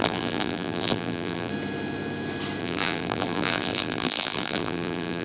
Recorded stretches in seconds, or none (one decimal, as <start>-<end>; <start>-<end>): 1.5-2.6